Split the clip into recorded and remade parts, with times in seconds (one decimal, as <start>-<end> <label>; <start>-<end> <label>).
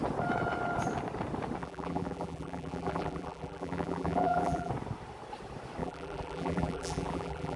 0.0-1.6 recorded; 1.6-4.7 remade; 4.7-5.8 recorded; 5.8-7.6 remade